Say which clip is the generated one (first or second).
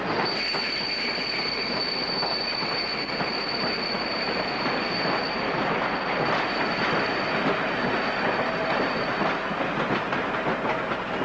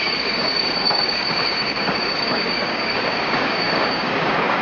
second